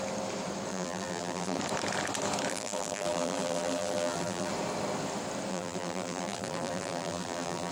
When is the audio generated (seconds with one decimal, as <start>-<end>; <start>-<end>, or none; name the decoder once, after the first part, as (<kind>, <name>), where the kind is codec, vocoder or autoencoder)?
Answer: 0.7-1.6 (vocoder, BigVGAN v2); 2.5-4.5; 5.5-7.7